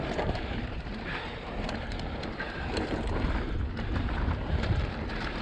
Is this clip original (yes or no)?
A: no